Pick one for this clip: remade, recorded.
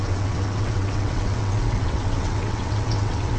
remade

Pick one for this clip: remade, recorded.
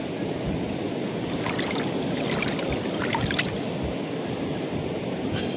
recorded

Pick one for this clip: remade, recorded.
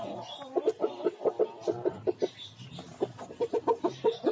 recorded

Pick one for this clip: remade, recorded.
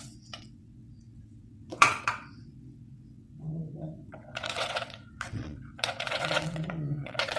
remade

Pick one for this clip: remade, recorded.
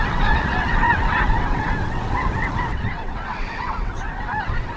remade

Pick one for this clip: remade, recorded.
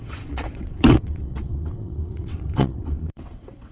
remade